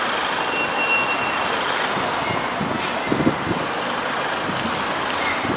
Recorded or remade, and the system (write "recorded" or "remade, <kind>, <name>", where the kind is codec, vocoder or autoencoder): recorded